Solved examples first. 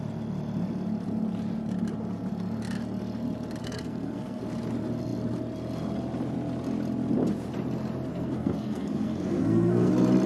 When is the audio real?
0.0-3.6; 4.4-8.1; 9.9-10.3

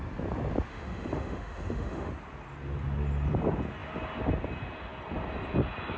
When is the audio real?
0.0-0.7; 2.1-6.0

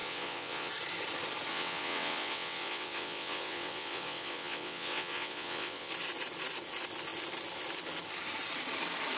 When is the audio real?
0.7-1.5; 5.9-9.2

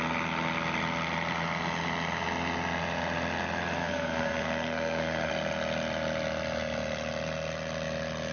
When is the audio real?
0.0-3.8; 5.3-8.3

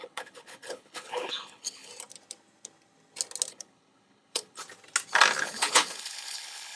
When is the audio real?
1.9-3.5; 4.6-5.4

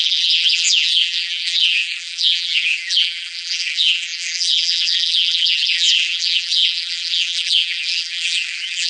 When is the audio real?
none

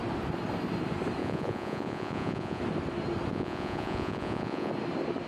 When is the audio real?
0.0-1.2; 2.6-3.3; 4.7-5.3